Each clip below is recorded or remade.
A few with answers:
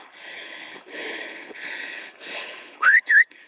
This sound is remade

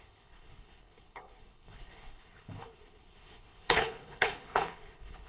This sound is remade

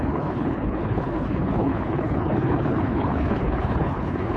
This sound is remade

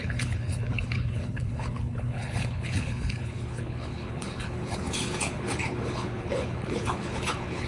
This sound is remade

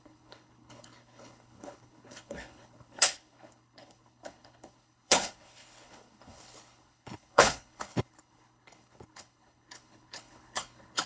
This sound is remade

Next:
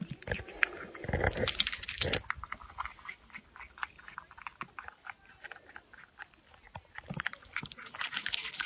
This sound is recorded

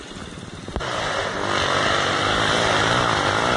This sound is recorded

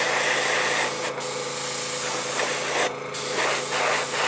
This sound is recorded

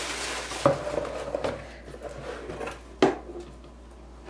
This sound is recorded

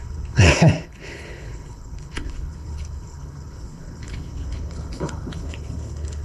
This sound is remade